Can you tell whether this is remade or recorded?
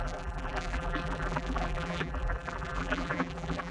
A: remade